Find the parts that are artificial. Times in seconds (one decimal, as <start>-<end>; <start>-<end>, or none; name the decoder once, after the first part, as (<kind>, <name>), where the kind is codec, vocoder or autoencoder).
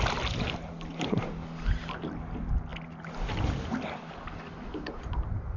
none